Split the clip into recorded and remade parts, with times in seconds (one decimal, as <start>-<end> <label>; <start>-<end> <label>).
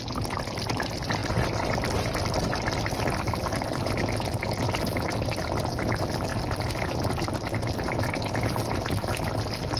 0.0-9.8 recorded